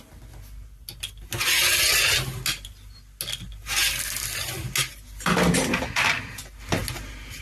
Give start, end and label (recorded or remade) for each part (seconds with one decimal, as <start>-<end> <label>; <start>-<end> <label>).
0.0-7.4 recorded